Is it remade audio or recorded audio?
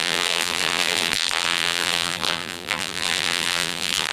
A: remade